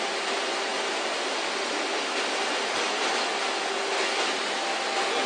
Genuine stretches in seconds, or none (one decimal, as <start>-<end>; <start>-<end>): 0.0-5.3